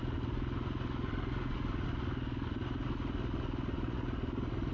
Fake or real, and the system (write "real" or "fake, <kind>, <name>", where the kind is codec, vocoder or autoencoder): real